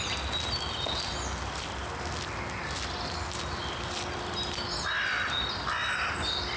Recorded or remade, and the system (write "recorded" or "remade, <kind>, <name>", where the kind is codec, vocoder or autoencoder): recorded